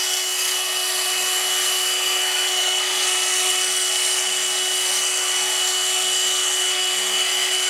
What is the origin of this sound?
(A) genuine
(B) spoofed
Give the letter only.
B